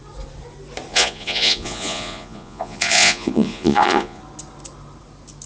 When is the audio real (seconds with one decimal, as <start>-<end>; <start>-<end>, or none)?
0.0-0.9; 4.2-5.5

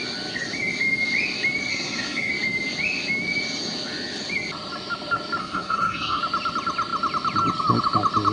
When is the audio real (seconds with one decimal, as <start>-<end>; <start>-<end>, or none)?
0.0-1.7; 2.3-5.4; 6.2-8.3

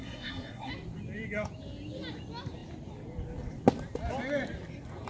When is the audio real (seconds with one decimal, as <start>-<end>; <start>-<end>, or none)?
0.7-5.1

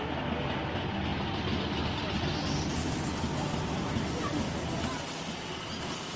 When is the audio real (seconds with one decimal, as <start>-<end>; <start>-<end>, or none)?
0.0-6.2

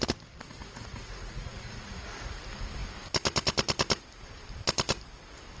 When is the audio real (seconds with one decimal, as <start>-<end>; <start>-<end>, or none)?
0.0-0.6; 2.4-5.6

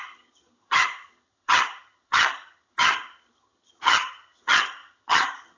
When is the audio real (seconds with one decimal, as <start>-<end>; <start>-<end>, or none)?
none

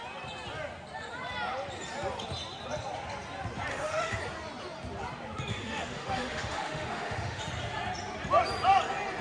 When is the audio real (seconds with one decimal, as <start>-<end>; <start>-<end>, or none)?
0.0-3.7; 4.2-5.5; 7.4-9.2